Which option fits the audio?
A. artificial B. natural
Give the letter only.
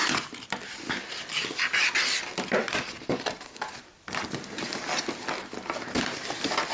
B